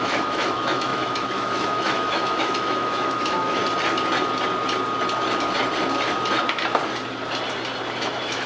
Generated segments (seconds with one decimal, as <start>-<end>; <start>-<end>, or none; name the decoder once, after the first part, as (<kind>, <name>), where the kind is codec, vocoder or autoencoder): 0.0-3.6 (autoencoder, DAC-VAE); 8.0-8.5